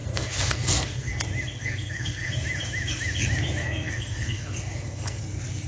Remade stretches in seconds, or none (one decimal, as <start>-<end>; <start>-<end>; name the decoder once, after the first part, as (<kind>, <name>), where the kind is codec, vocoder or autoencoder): 0.0-1.2 (codec, SNAC); 1.6-2.3; 3.6-5.2